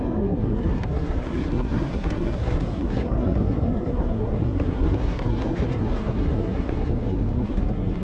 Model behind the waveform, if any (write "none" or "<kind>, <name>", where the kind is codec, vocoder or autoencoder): codec, SNAC